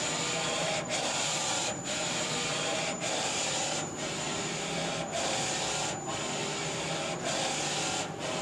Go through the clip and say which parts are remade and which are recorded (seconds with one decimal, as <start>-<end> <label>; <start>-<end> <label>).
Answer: 0.0-0.6 recorded; 0.6-5.0 remade; 5.0-6.4 recorded; 6.4-6.9 remade; 6.9-8.4 recorded